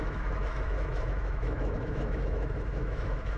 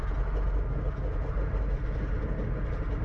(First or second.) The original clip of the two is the second